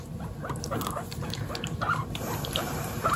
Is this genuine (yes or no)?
no